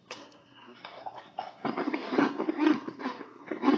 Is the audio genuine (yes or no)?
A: no